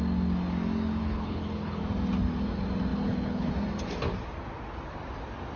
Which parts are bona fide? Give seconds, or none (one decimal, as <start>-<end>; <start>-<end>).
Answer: 0.0-1.0; 1.8-2.9; 3.5-5.6